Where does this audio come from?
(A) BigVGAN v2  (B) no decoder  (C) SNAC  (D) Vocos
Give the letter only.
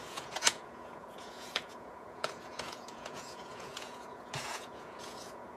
D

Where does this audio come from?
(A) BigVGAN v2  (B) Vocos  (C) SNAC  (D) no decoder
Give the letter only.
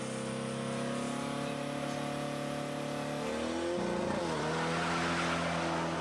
D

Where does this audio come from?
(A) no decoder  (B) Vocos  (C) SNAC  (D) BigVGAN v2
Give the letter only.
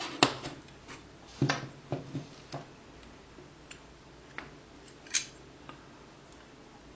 A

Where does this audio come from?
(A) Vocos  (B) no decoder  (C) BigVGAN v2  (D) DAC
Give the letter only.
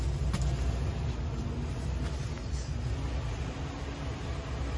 B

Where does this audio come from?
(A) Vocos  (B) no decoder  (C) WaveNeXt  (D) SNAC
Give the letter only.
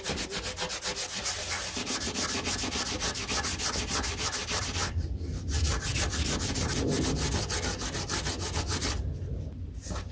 B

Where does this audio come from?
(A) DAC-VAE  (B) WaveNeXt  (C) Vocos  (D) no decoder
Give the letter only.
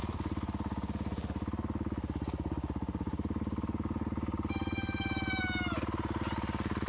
D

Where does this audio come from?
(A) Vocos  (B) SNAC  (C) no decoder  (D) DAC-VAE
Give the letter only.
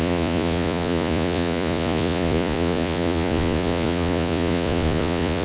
A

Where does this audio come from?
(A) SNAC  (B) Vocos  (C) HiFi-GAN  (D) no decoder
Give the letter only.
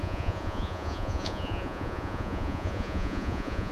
B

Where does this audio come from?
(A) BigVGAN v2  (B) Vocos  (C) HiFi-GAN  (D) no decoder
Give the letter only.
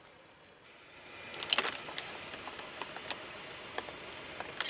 D